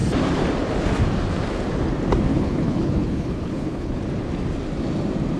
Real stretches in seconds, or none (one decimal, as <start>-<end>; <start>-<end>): 0.0-2.3; 4.0-5.4